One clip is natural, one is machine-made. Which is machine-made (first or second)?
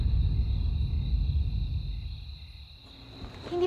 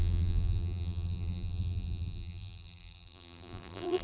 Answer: second